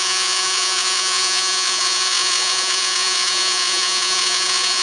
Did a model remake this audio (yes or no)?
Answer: yes